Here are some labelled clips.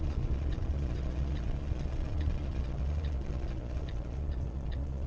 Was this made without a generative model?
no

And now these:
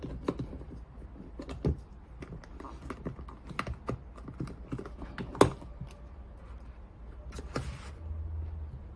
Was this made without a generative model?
yes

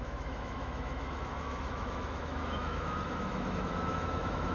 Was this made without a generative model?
no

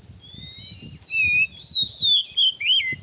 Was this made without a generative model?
yes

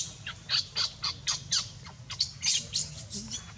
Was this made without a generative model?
yes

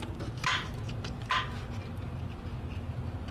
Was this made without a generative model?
yes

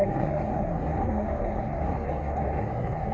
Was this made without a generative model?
no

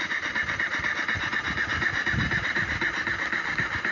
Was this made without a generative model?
yes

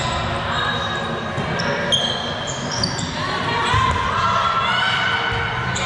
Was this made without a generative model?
yes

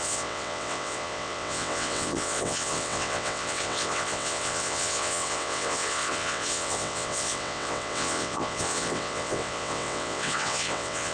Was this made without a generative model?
no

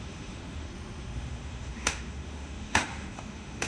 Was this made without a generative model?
no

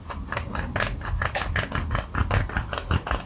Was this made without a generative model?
yes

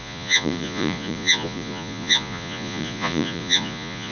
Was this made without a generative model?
no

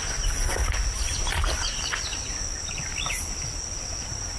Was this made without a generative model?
yes